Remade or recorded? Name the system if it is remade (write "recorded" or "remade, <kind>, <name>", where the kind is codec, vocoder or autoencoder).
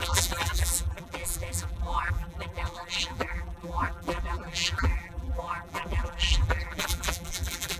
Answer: remade, vocoder, BigVGAN v2